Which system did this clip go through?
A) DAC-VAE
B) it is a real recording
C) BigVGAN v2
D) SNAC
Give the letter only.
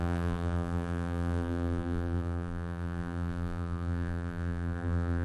C